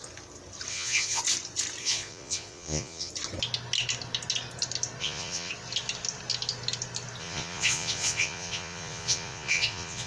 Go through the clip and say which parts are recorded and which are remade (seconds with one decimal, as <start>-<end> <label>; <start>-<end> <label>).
0.0-0.7 recorded; 0.7-1.2 remade; 1.2-1.8 recorded; 1.8-3.1 remade; 3.1-5.0 recorded; 5.0-5.5 remade; 5.5-7.2 recorded; 7.2-10.1 remade